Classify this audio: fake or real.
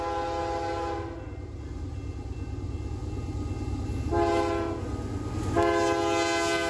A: real